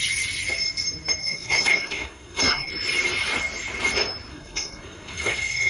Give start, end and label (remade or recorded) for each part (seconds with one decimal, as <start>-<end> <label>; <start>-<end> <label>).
0.0-1.2 recorded; 1.2-2.7 remade; 2.7-4.3 recorded; 4.3-5.7 remade